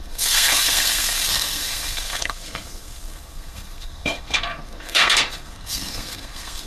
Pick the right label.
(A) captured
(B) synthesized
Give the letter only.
B